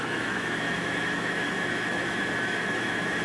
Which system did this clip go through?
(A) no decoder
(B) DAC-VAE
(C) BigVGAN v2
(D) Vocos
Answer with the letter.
B